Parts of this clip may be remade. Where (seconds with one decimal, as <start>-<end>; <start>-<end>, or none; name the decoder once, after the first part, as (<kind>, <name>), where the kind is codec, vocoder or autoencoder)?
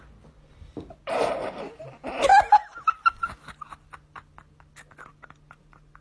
none